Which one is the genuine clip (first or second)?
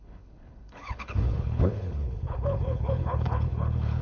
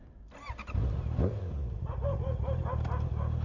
second